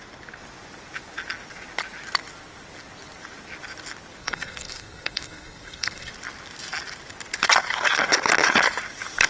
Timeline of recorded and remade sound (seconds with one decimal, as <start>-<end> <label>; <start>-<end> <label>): 0.0-4.2 recorded; 4.2-6.1 remade; 6.1-9.3 recorded